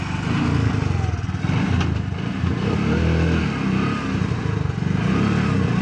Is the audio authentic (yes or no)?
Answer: yes